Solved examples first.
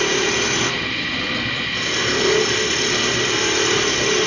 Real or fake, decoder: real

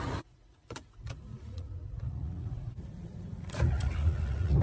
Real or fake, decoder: fake, vocoder, Vocos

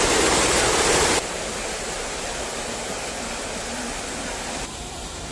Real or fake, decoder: real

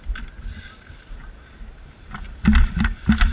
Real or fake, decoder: real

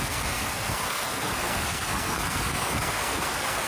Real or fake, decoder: fake, codec, SNAC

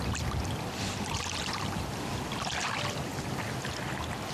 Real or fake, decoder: real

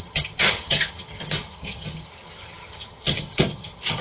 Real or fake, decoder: fake, vocoder, HiFi-GAN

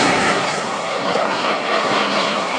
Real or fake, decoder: fake, codec, SNAC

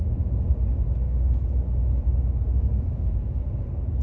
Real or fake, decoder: real